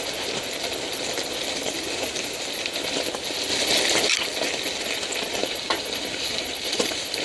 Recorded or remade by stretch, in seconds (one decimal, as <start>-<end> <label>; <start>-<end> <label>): 0.0-5.4 recorded; 5.4-7.2 remade

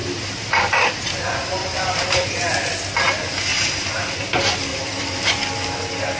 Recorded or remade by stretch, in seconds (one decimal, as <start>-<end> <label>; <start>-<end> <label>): 0.0-0.9 remade; 0.9-1.6 recorded; 1.6-2.3 remade; 2.3-3.5 recorded; 3.5-4.1 remade; 4.1-4.7 recorded; 4.7-5.5 remade; 5.5-6.2 recorded

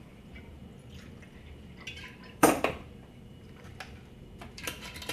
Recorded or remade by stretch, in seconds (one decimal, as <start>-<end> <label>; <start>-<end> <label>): 0.0-0.6 remade; 0.6-2.3 recorded; 2.3-3.7 remade; 3.7-5.1 recorded

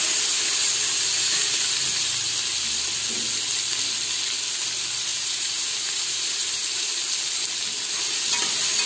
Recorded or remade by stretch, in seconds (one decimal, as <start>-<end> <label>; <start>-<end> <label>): 0.0-5.1 recorded; 5.1-7.0 remade; 7.0-8.9 recorded

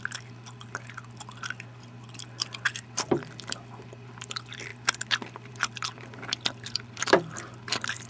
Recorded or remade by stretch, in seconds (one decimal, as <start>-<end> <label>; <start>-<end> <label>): 0.0-8.1 remade

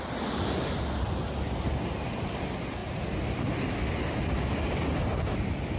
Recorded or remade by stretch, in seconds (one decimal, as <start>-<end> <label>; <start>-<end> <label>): 0.0-5.8 recorded

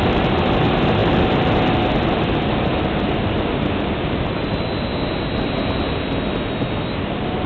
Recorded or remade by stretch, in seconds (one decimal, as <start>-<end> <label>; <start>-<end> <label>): 0.0-7.5 recorded